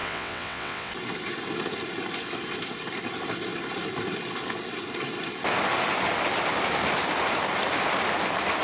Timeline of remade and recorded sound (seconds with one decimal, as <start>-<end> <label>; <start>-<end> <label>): 0.0-0.9 remade; 0.9-8.6 recorded